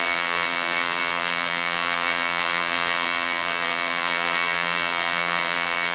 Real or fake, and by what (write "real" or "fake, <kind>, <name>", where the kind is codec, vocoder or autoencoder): fake, vocoder, BigVGAN v2